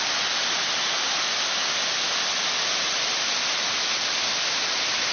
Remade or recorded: recorded